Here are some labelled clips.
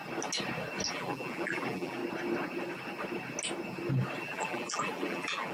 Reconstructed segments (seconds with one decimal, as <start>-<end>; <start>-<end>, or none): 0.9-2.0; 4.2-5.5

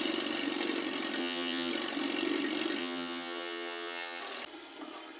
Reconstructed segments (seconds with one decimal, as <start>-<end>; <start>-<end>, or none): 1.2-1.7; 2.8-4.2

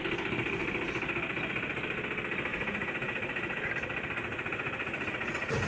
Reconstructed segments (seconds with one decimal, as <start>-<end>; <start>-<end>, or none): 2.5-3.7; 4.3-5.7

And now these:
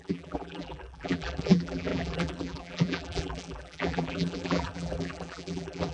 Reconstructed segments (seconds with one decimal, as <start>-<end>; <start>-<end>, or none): 0.0-5.9